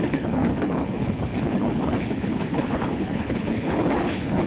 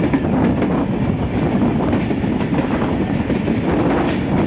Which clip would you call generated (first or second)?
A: first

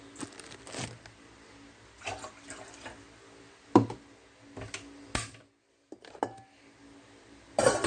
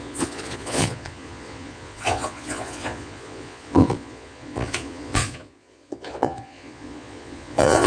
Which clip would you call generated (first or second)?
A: second